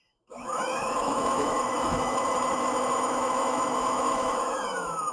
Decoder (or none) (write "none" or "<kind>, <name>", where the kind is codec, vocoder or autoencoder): autoencoder, DAC-VAE